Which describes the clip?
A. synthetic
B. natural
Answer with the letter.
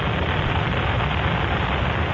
A